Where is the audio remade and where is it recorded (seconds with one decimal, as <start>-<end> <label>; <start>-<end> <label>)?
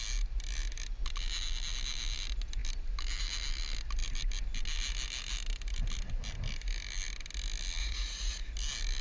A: 0.0-7.8 recorded; 7.8-8.4 remade; 8.4-9.0 recorded